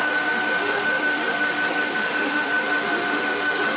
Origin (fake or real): fake